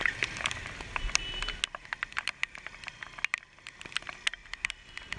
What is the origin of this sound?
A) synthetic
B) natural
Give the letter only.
B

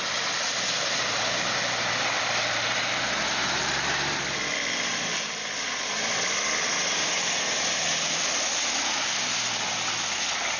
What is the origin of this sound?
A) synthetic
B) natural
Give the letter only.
B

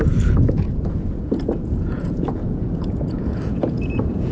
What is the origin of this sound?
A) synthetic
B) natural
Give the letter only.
A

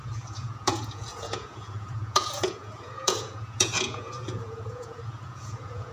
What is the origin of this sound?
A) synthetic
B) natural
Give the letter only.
A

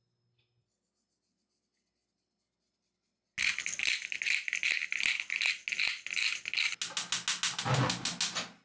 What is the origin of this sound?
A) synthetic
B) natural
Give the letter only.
B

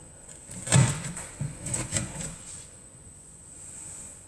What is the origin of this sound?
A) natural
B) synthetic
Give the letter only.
B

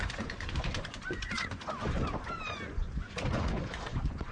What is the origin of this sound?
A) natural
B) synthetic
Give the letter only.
B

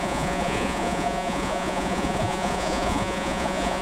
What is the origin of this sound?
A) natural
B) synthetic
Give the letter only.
B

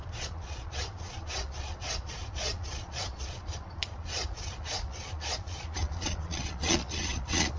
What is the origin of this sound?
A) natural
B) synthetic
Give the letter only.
B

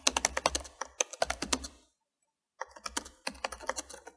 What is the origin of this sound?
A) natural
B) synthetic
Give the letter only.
A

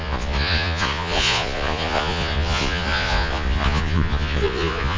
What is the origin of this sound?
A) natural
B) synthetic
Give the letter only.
B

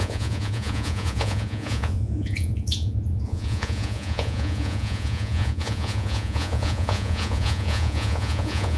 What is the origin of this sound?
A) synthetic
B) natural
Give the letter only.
A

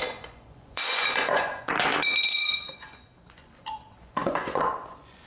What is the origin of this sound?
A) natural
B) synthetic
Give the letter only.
B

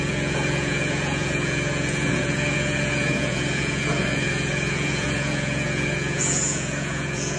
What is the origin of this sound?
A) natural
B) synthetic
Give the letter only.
B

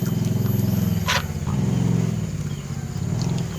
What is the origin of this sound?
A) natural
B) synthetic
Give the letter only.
A